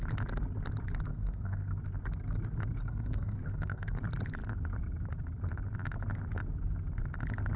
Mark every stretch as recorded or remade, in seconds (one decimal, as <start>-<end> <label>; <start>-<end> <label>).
0.0-1.1 recorded; 1.1-1.8 remade; 1.8-2.8 recorded; 2.8-4.0 remade; 4.0-7.6 recorded